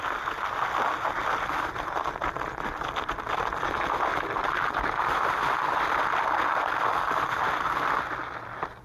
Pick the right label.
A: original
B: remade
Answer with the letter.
A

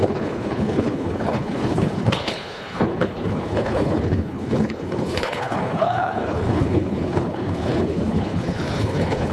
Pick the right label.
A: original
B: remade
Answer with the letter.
B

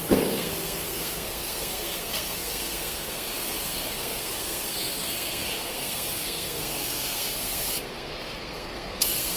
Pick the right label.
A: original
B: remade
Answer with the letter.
B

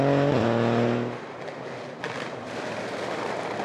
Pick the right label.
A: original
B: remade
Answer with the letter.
A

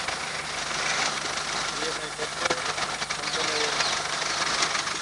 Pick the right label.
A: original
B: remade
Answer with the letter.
A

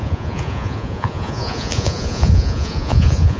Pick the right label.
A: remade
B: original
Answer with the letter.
A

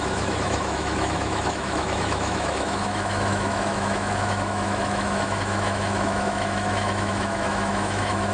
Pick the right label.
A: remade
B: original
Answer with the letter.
A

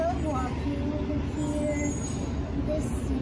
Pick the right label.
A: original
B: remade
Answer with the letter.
A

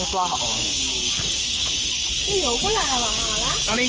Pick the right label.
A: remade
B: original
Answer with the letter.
A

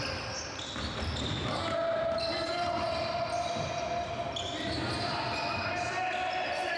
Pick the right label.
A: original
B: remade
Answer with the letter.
A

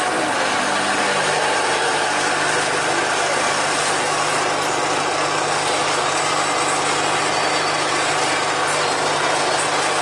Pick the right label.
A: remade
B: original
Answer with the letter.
B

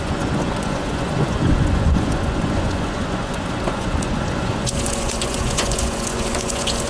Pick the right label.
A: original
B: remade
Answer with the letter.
B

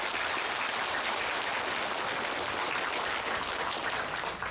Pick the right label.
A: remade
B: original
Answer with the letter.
B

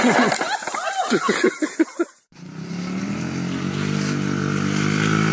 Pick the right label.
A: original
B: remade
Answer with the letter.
A